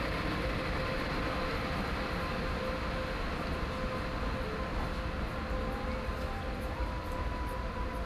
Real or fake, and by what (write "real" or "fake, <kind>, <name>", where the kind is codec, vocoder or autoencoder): real